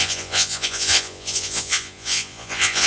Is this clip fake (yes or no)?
yes